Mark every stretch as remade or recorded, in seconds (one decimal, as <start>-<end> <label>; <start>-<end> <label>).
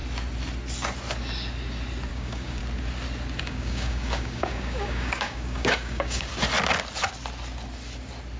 0.0-2.1 recorded; 2.1-2.6 remade; 2.6-3.4 recorded; 3.4-6.3 remade; 6.3-8.4 recorded